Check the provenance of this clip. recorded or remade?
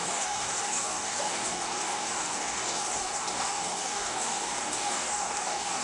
remade